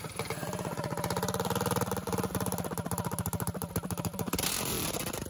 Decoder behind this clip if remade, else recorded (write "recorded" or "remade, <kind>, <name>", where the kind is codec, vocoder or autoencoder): recorded